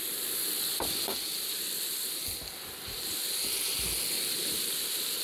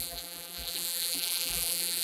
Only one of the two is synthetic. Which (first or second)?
second